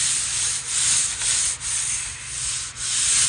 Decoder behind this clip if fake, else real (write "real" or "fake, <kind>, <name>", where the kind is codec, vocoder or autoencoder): real